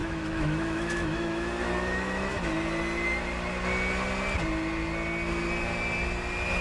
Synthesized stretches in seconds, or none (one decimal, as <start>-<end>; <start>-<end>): 0.0-2.5